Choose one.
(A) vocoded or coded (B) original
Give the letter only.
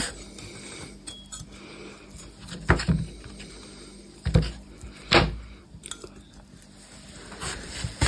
B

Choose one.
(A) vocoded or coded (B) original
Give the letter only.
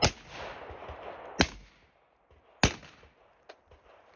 B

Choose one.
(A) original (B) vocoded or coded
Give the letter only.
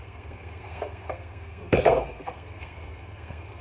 B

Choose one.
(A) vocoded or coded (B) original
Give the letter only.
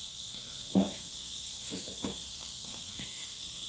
A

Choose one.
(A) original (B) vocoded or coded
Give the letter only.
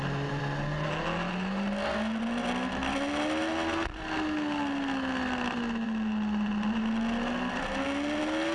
A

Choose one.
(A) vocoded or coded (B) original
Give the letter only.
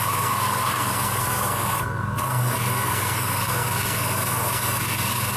A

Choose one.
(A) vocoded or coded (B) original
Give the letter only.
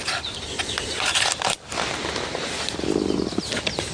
B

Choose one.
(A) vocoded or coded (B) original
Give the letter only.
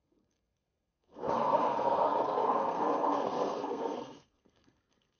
A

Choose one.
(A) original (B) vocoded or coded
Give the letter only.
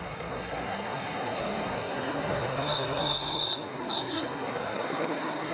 B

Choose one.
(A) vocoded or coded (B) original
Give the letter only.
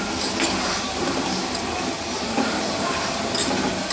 B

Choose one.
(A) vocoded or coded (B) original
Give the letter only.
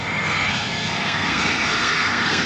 A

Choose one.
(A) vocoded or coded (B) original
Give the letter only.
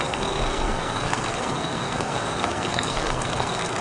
A